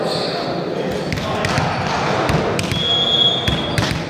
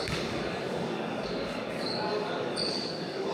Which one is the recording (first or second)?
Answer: first